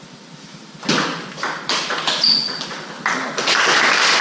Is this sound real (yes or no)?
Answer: yes